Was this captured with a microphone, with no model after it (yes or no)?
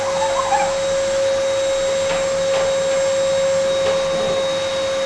yes